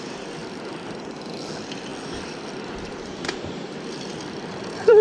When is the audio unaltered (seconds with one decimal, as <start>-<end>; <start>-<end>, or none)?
0.0-0.4; 1.0-1.9